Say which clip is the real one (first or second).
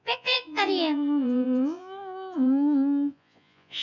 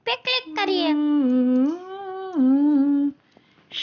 second